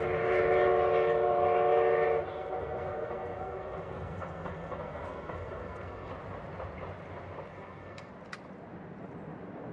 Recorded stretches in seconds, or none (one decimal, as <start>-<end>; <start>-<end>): 0.0-2.3; 6.1-7.5; 8.1-9.7